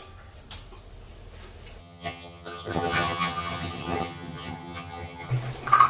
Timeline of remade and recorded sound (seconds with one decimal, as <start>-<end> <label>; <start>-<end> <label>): 0.0-1.8 recorded; 1.8-5.3 remade; 5.3-5.9 recorded